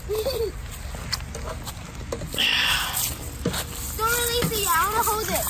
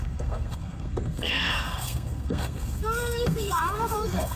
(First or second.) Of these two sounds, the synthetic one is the second